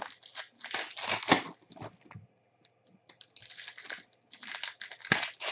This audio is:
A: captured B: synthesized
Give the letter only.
A